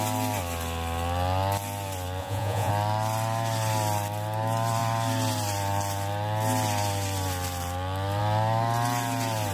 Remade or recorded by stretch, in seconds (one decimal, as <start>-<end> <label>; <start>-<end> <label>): 0.0-2.2 recorded; 2.2-2.7 remade; 2.7-9.5 recorded